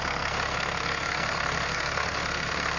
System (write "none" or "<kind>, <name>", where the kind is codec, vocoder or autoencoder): codec, SNAC